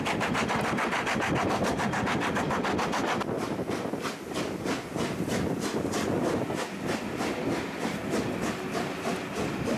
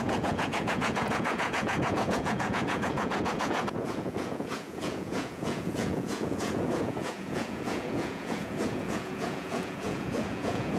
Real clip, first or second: first